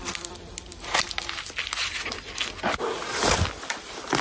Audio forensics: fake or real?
real